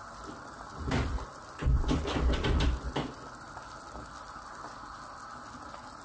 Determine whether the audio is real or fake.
real